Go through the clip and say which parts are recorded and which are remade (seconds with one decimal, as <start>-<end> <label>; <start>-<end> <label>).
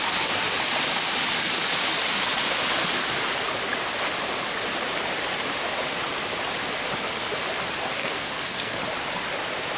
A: 0.0-8.0 recorded; 8.0-8.8 remade; 8.8-9.8 recorded